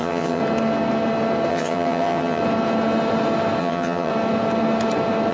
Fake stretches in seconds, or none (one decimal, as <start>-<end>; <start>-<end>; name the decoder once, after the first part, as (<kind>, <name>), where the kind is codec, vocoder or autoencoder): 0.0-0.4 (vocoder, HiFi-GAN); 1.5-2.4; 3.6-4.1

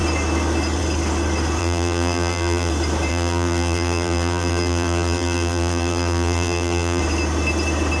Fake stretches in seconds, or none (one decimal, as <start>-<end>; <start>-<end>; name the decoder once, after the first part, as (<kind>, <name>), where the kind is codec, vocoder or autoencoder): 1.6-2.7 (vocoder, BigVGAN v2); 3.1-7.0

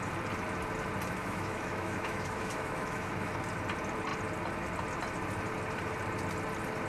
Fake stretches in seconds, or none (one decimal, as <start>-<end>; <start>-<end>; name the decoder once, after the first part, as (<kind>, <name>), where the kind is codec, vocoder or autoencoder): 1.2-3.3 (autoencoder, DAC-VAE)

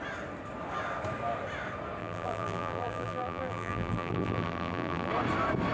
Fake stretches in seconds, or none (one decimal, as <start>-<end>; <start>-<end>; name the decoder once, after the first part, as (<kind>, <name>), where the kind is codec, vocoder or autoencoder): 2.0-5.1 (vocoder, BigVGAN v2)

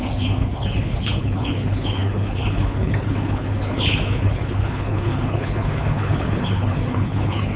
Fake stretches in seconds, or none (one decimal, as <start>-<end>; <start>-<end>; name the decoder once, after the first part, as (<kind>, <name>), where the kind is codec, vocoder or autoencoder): 0.0-7.6 (codec, HILCodec)